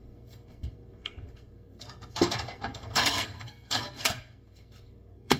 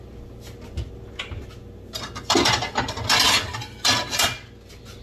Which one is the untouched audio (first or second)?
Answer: second